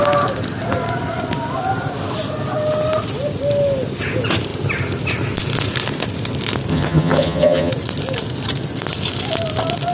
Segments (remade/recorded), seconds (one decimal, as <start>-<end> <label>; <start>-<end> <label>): 0.0-6.7 recorded; 6.7-7.7 remade; 7.7-9.9 recorded